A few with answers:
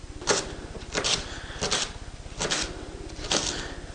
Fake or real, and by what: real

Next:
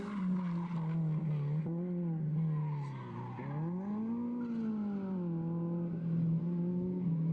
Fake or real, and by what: real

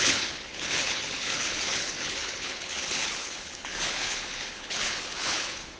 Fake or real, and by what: fake, codec, HILCodec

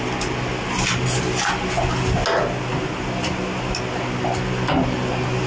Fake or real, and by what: real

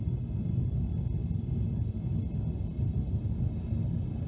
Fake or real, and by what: real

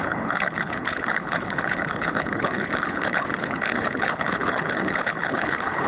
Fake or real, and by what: fake, codec, HILCodec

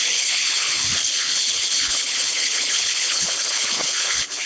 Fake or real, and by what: fake, codec, HILCodec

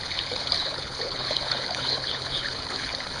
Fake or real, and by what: fake, codec, HILCodec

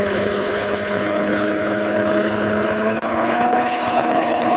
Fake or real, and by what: fake, codec, HILCodec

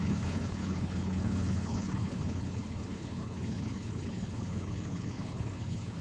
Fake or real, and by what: fake, codec, HILCodec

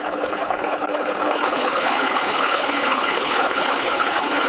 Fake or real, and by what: fake, codec, HILCodec